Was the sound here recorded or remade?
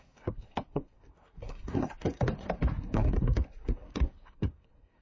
remade